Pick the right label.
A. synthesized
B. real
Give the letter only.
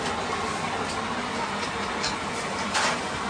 B